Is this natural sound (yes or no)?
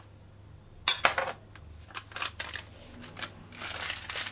yes